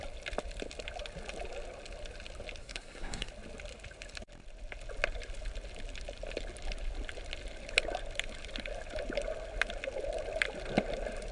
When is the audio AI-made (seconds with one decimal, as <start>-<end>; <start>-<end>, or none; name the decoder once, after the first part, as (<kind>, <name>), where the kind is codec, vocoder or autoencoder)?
2.6-3.3 (codec, SNAC)